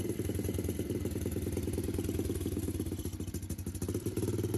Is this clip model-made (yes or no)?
no